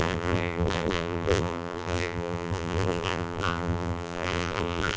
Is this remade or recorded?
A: remade